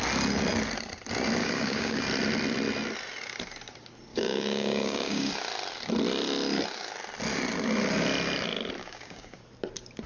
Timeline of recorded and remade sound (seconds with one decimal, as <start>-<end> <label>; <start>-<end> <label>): 0.0-1.4 recorded; 1.4-2.0 remade; 2.0-4.1 recorded; 4.1-5.3 remade; 5.3-8.8 recorded; 8.8-9.4 remade; 9.4-10.1 recorded

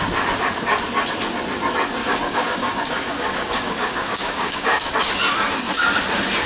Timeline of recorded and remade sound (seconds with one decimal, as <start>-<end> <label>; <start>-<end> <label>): 0.0-2.0 recorded; 2.0-5.1 remade; 5.1-6.5 recorded